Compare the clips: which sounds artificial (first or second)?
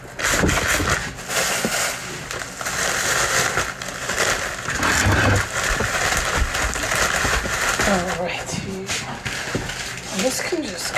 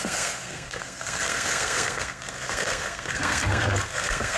second